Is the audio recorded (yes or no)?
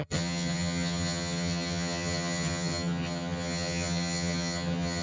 no